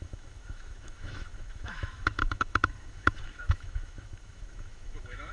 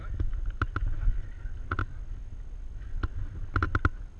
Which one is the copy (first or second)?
first